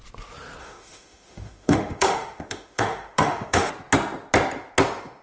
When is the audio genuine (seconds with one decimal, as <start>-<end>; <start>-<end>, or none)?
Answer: 0.0-0.6; 3.7-5.2